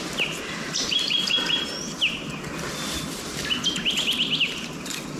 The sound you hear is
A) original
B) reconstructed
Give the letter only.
A